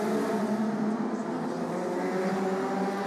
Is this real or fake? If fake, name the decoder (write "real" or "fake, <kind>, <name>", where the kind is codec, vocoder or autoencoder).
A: real